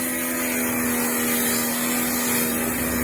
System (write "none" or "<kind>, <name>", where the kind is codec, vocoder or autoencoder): none